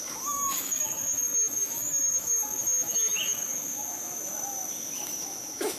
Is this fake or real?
fake